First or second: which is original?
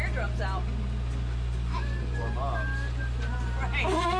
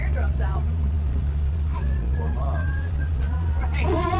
first